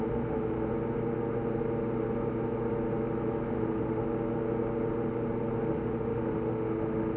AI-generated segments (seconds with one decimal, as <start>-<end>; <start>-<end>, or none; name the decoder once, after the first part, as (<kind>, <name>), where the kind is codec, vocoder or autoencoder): 0.0-0.7 (autoencoder, DAC-VAE); 3.5-4.0; 5.7-7.2